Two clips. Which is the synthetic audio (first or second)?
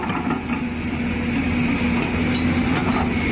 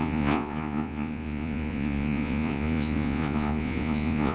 second